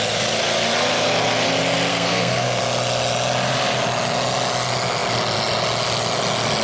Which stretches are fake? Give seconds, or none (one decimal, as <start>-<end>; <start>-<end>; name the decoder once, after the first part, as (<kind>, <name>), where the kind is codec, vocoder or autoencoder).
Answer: 1.9-2.6 (codec, SNAC)